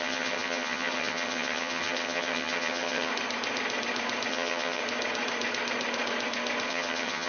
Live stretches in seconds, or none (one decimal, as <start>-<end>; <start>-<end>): 3.1-4.3; 4.8-6.7